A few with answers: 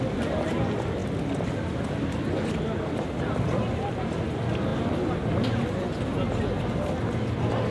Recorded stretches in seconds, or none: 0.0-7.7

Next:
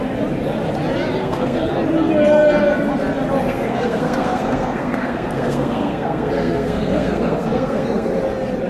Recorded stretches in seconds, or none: 0.0-1.2; 1.7-3.4; 8.2-8.7

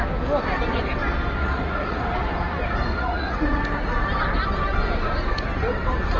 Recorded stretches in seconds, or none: 0.0-1.4; 2.0-2.9; 3.6-6.2

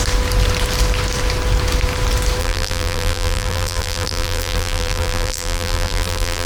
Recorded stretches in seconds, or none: 0.0-2.4

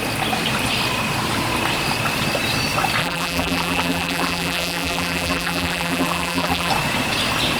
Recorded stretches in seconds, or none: 0.0-3.0; 6.7-7.6